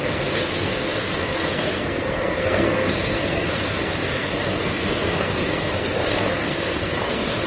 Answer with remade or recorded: remade